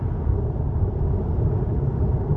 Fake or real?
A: real